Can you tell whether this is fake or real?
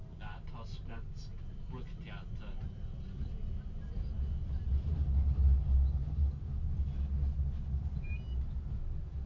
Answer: real